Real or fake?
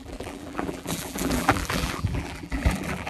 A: fake